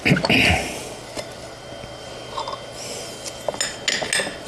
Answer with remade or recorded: recorded